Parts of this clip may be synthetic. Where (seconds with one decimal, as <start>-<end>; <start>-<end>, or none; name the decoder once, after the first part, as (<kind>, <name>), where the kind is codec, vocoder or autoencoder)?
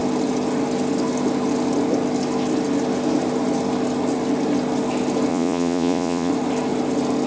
5.3-6.3 (vocoder, Vocos)